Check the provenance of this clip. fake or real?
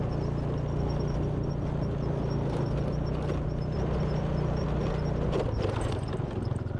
real